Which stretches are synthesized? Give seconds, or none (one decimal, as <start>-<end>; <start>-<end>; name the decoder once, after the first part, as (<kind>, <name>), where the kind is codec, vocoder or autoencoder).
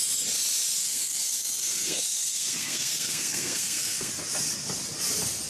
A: 0.8-4.1 (codec, SNAC)